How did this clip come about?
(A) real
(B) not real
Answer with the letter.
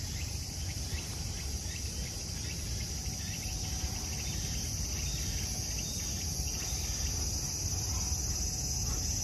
A